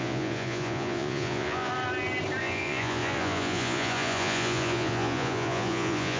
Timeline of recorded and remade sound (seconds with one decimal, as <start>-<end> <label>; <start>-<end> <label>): 0.0-1.7 remade; 1.7-2.4 recorded; 2.4-6.2 remade